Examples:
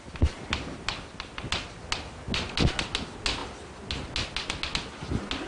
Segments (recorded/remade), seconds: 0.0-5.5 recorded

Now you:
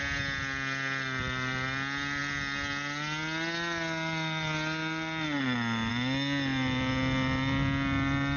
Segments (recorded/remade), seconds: 0.0-8.4 recorded

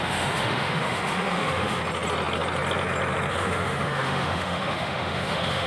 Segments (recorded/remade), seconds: 0.0-1.8 remade; 1.8-3.3 recorded; 3.3-5.7 remade

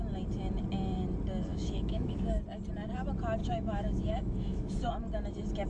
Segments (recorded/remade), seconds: 0.0-1.5 recorded; 1.5-2.4 remade; 2.4-3.4 recorded; 3.4-4.9 remade; 4.9-5.7 recorded